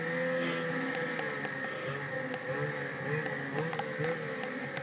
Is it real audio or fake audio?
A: real